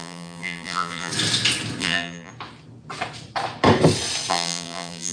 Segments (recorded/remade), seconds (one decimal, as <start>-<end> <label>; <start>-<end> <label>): 0.0-1.1 remade; 1.1-1.8 recorded; 1.8-2.3 remade; 2.3-4.3 recorded; 4.3-5.1 remade